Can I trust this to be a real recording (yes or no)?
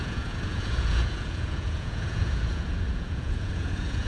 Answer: no